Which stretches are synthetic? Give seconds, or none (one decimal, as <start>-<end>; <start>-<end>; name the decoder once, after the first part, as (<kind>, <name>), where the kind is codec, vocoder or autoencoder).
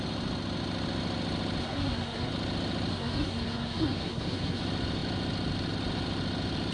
1.6-2.3 (codec, SNAC); 2.9-4.6